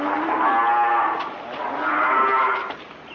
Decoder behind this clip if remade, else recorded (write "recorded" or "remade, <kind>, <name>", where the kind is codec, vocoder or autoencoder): recorded